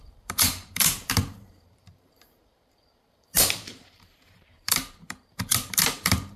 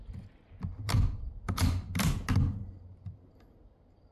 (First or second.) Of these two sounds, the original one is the second